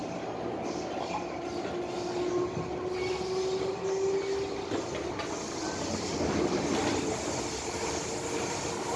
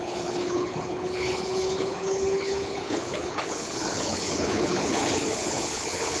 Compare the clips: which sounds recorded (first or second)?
first